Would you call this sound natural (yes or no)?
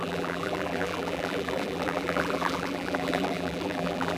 no